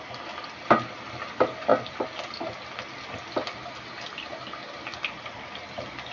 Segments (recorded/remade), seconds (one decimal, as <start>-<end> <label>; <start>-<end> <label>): 0.0-6.1 recorded